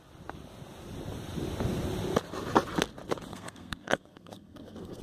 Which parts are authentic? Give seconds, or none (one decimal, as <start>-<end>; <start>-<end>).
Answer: 0.0-3.3